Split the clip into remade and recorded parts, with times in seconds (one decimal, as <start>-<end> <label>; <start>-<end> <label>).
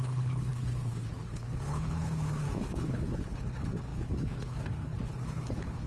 0.0-5.9 remade